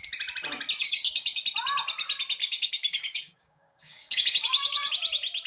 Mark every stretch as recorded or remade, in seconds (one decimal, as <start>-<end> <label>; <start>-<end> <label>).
0.0-0.8 recorded; 0.8-1.4 remade; 1.4-2.4 recorded; 2.4-4.9 remade; 4.9-5.5 recorded